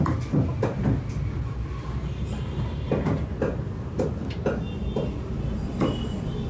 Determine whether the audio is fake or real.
real